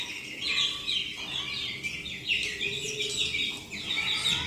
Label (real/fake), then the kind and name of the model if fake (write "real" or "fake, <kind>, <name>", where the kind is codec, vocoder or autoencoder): real